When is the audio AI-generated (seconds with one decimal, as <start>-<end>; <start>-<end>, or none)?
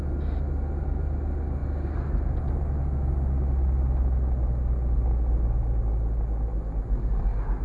none